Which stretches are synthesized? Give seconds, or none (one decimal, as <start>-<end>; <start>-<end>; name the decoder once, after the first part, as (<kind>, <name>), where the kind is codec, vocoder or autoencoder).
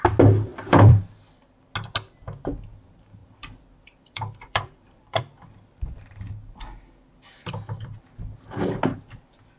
0.5-1.0 (vocoder, BigVGAN v2); 3.2-5.2